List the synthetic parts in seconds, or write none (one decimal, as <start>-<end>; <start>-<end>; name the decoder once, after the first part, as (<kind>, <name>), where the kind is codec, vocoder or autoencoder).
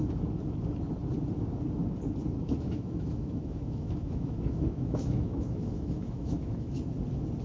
2.4-6.8 (autoencoder, DAC-VAE)